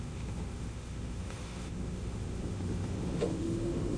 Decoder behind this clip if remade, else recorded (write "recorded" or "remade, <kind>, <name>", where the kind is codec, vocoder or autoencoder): remade, autoencoder, DAC-VAE